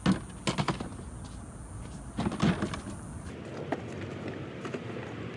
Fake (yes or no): no